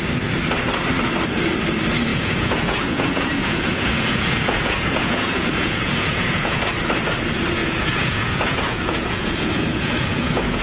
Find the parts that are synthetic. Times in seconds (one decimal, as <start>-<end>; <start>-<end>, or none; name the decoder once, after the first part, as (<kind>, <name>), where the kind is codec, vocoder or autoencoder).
2.1-6.7 (vocoder, Vocos); 7.6-10.6

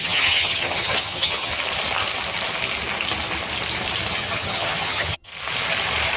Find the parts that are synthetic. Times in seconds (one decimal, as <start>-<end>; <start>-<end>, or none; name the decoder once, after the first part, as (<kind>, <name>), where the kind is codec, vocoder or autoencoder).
0.0-1.5 (vocoder, HiFi-GAN); 4.1-5.3

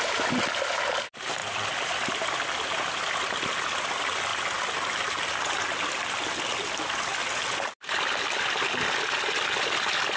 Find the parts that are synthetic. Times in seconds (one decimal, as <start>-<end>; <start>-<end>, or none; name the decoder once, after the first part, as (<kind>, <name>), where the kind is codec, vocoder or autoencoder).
none

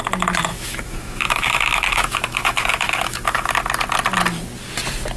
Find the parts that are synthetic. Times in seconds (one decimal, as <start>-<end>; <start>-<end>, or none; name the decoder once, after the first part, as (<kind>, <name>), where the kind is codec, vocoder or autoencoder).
0.5-3.5 (autoencoder, DAC-VAE)

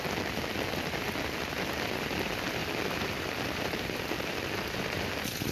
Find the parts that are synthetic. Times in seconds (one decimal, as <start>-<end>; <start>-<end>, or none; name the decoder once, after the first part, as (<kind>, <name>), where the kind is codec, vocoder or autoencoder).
2.6-4.4 (vocoder, BigVGAN v2)

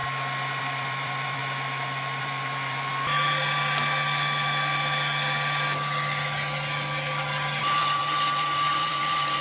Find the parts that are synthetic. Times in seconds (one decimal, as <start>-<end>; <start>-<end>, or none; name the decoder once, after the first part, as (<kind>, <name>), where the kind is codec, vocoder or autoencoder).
0.6-1.4 (vocoder, BigVGAN v2); 2.2-2.9; 7.6-9.4

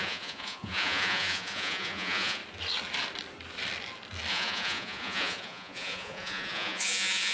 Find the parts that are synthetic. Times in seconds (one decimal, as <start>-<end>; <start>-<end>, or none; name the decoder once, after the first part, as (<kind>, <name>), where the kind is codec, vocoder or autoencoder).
0.0-2.4 (vocoder, Vocos); 4.3-7.3